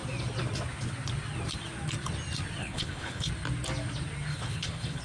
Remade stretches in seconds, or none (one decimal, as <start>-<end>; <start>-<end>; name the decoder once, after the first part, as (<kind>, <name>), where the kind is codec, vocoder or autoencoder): 2.6-3.3 (codec, HILCodec); 4.3-5.0